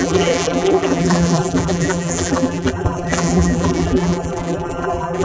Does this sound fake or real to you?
fake